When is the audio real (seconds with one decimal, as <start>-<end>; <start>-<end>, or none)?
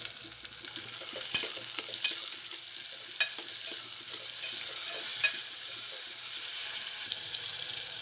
0.0-5.1